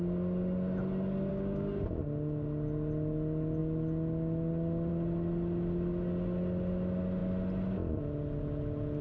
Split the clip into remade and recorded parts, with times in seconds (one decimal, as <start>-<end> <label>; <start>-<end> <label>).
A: 0.0-1.3 recorded; 1.3-2.0 remade; 2.0-9.0 recorded